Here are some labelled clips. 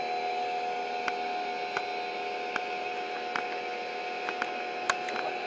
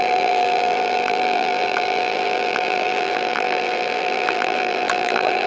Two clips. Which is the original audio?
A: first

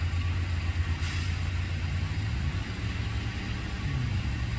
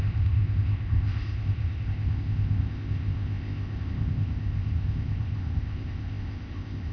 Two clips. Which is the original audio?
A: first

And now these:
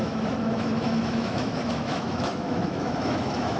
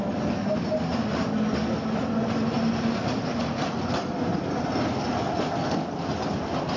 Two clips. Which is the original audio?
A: second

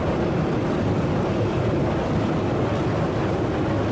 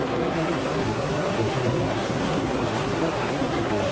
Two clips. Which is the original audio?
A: first